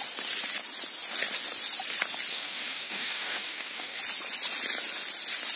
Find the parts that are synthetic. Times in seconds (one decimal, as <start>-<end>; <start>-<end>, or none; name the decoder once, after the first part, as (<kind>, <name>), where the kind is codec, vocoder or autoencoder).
2.3-4.0 (codec, DAC)